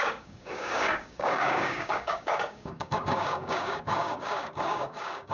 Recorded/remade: remade